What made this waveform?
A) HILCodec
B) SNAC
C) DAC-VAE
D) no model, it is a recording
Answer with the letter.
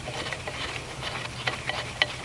D